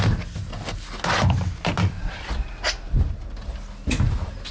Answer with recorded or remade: recorded